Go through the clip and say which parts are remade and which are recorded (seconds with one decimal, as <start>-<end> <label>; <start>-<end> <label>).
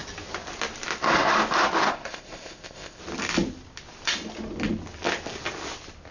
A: 0.0-1.9 recorded; 1.9-3.0 remade; 3.0-6.1 recorded